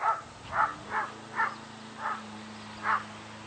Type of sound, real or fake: real